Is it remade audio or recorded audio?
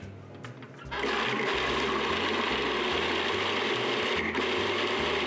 recorded